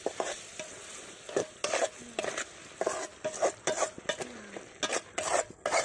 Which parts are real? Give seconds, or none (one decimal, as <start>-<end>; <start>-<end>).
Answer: 0.0-5.8